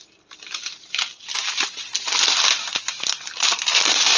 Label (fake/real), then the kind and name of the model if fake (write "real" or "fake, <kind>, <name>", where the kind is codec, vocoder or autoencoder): real